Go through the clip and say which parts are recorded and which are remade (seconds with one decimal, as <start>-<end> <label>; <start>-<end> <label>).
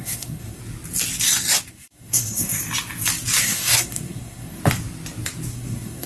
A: 0.0-0.6 remade; 0.6-1.7 recorded; 1.7-2.6 remade; 2.6-3.4 recorded; 3.4-4.6 remade; 4.6-5.5 recorded; 5.5-6.1 remade